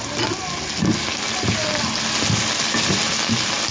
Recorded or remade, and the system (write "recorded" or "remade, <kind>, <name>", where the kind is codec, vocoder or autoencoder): recorded